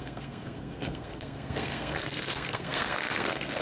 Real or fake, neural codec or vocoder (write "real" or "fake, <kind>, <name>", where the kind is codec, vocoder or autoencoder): fake, codec, SNAC